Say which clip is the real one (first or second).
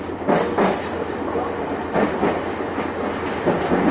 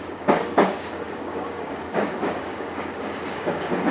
first